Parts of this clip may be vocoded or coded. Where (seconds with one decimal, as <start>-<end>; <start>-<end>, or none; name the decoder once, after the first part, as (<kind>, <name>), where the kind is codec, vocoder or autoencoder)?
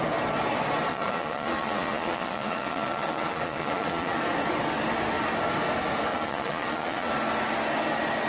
0.9-4.2 (vocoder, Vocos); 6.1-7.1